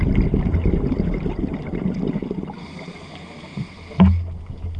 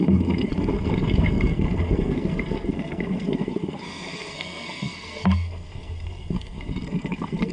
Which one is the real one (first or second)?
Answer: first